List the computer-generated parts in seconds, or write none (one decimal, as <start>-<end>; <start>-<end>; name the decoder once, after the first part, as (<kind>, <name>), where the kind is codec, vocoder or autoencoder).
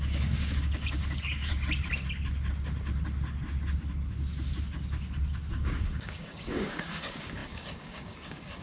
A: 0.0-1.5 (codec, DAC); 5.5-8.6